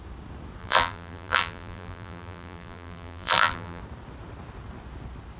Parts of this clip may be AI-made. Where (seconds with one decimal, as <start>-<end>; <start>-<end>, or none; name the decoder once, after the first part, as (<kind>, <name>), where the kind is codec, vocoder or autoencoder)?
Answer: 0.6-3.8 (vocoder, BigVGAN v2)